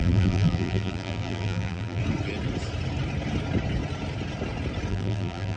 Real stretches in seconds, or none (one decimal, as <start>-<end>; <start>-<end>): 2.0-4.9